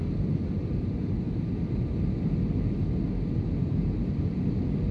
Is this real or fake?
real